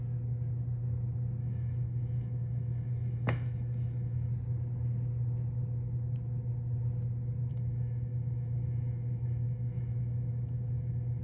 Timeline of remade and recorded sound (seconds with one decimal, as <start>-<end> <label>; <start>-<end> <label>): 0.0-1.4 recorded; 1.4-4.3 remade; 4.3-7.5 recorded; 7.5-11.2 remade